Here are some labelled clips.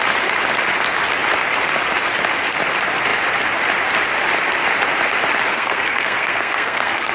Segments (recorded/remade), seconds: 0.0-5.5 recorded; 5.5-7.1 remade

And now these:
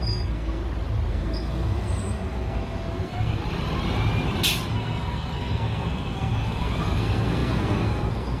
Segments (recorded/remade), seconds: 0.0-0.6 remade; 0.6-1.1 recorded; 1.1-3.4 remade; 3.4-4.7 recorded; 4.7-8.4 remade

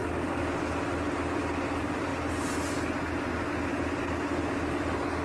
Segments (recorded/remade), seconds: 0.0-5.2 recorded

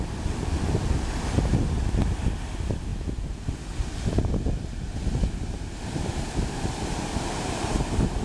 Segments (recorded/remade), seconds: 0.0-8.2 recorded

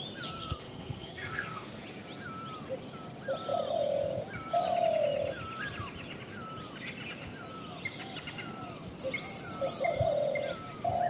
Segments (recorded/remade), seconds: 0.0-0.4 recorded; 0.4-1.8 remade; 1.8-11.1 recorded

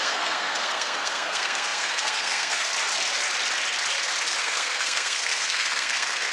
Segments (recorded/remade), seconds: 0.0-2.7 remade; 2.7-4.4 recorded; 4.4-6.3 remade